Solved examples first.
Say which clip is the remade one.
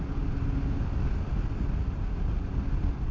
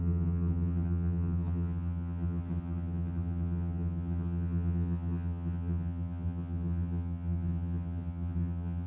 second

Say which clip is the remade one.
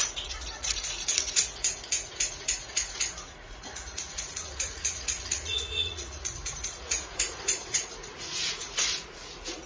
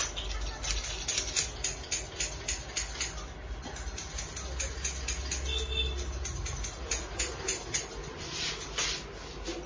first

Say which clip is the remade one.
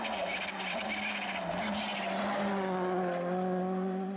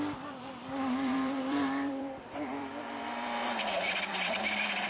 second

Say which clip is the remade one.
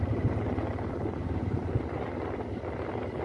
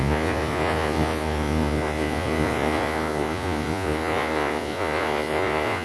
second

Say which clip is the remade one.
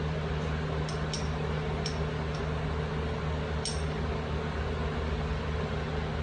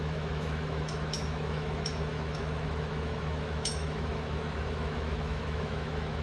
second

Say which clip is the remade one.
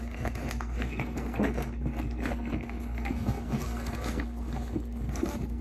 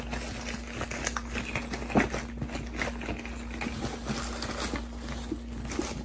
first